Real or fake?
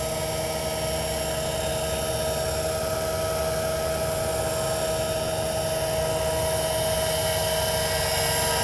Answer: real